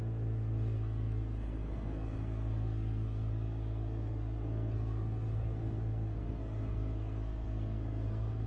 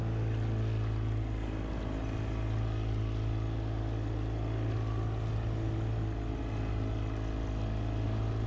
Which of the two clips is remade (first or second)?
first